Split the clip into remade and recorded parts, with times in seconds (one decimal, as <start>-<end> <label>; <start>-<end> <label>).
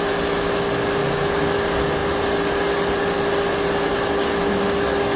0.0-5.2 recorded